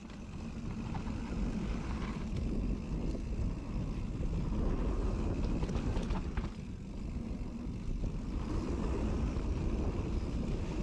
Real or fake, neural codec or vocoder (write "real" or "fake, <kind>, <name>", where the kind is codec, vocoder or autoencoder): real